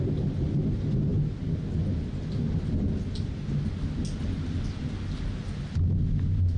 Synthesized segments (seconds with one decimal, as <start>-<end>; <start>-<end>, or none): none